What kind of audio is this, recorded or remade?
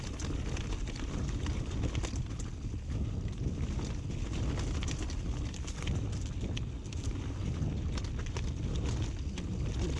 recorded